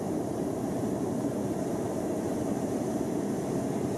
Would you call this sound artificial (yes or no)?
yes